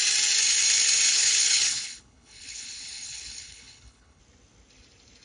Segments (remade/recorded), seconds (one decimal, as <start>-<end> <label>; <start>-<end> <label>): 0.0-1.1 recorded; 1.1-4.2 remade; 4.2-5.2 recorded